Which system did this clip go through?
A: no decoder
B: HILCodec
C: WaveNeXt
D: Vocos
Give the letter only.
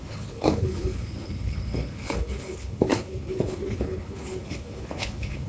B